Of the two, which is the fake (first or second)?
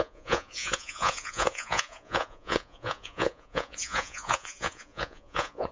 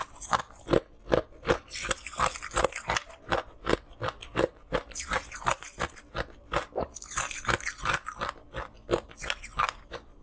first